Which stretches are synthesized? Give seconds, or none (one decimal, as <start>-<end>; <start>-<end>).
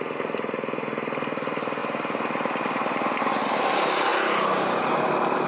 none